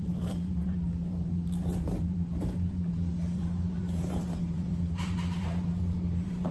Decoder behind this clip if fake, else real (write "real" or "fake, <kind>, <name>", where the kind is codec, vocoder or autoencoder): fake, vocoder, BigVGAN v2